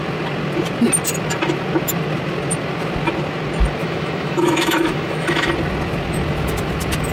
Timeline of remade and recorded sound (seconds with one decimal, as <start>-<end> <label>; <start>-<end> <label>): 0.0-3.8 recorded; 3.8-5.5 remade; 5.5-7.1 recorded

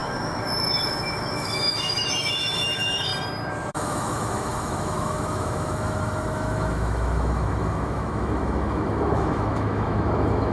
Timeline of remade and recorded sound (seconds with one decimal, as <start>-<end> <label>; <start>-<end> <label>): 0.0-3.1 remade; 3.1-3.7 recorded; 3.7-10.5 remade

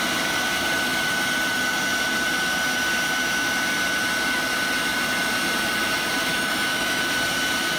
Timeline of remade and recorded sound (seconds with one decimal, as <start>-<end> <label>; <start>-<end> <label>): 0.0-6.3 recorded; 6.3-7.0 remade; 7.0-7.8 recorded

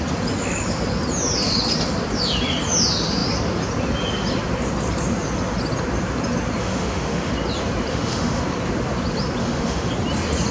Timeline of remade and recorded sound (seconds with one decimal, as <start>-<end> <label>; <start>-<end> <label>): 0.0-6.6 recorded; 6.6-7.3 remade; 7.3-7.9 recorded; 7.9-8.4 remade; 8.4-9.4 recorded; 9.4-9.9 remade; 9.9-10.5 recorded

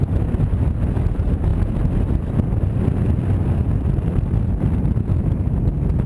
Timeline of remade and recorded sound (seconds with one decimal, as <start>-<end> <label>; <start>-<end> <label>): 0.0-6.1 recorded